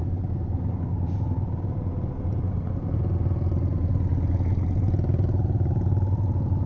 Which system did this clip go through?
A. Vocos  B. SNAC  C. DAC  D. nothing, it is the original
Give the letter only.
D